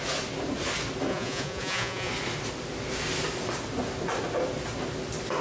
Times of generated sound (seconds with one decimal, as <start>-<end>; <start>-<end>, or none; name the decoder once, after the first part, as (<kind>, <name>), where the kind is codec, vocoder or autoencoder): 1.1-2.1 (vocoder, Vocos)